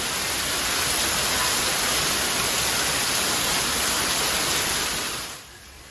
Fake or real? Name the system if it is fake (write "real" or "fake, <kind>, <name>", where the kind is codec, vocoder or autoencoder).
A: real